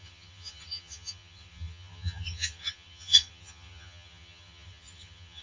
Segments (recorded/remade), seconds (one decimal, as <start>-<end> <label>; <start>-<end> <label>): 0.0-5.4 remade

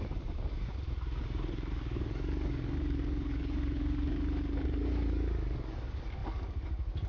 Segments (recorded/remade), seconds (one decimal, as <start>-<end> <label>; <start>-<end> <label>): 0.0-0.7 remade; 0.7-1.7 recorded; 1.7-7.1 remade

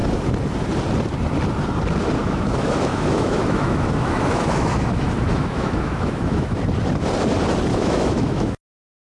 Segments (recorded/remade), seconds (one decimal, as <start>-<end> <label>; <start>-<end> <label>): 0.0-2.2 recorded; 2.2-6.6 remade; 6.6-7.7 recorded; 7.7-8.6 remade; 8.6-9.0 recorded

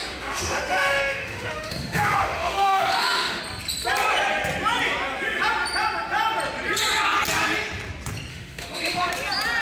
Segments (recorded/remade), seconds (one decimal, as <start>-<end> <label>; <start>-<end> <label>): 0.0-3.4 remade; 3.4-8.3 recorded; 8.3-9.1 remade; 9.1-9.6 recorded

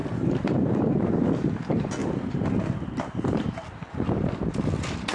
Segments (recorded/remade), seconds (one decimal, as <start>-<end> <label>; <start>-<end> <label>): 0.0-1.0 remade; 1.0-2.0 recorded; 2.0-4.6 remade; 4.6-5.1 recorded

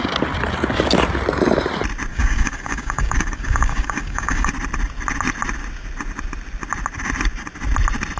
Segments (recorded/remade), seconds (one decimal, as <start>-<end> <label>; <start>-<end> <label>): 0.0-2.1 recorded; 2.1-4.5 remade; 4.5-8.2 recorded